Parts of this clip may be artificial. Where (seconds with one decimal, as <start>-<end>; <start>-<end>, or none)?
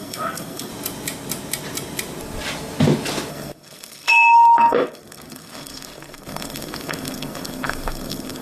0.0-0.7; 3.3-8.4